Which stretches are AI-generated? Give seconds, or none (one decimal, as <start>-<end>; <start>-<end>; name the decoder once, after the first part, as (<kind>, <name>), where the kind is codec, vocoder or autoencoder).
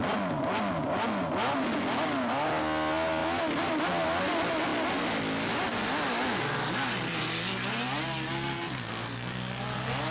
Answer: 3.2-3.8 (vocoder, BigVGAN v2)